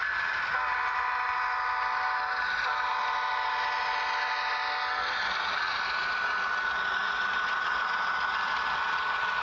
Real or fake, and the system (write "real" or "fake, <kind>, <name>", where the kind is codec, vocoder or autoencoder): real